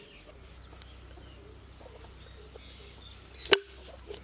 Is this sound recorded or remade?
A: recorded